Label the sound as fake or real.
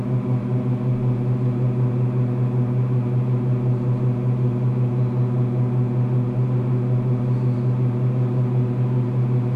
real